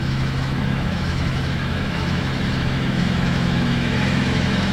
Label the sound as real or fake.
fake